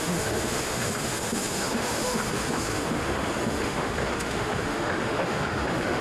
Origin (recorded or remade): remade